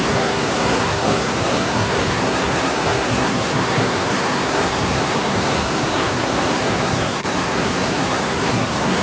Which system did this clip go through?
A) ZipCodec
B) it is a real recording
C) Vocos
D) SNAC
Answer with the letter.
D